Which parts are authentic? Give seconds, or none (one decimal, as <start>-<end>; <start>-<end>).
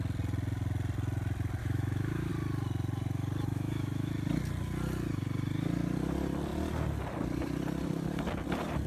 0.0-1.6; 2.3-3.5; 4.1-8.9